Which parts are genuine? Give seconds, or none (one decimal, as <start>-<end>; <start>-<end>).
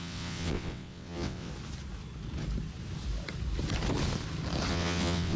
1.5-4.7